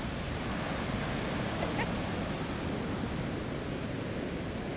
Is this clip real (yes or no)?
yes